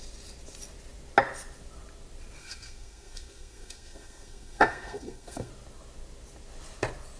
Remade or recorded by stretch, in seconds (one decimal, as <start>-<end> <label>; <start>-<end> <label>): 0.0-2.4 recorded; 2.4-5.5 remade; 5.5-7.2 recorded